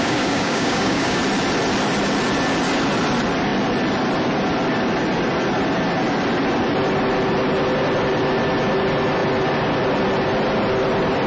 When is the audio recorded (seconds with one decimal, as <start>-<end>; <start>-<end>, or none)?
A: 1.2-11.3